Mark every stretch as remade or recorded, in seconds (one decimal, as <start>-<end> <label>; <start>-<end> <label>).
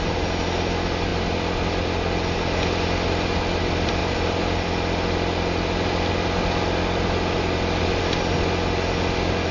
0.0-9.5 recorded